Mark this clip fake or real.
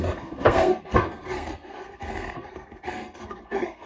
fake